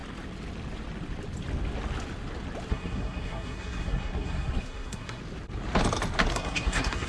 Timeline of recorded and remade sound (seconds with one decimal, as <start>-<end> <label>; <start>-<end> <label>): 0.0-2.7 recorded; 2.7-5.2 remade; 5.2-6.3 recorded; 6.3-7.1 remade